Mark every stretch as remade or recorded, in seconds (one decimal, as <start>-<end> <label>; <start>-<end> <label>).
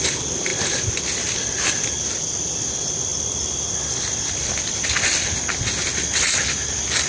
0.0-7.1 recorded